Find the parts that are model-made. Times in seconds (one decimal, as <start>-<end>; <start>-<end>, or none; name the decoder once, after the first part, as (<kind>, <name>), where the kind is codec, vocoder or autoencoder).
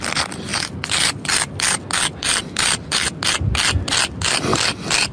none